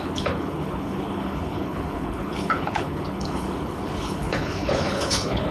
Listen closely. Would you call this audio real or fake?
fake